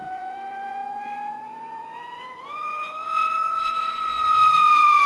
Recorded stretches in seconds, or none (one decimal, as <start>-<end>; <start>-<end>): none